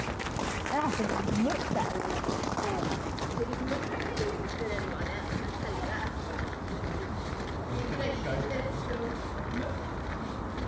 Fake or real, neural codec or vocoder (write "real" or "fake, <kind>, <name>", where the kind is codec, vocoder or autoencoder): real